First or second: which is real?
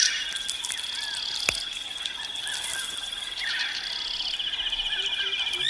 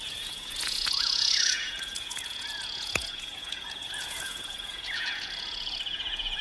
first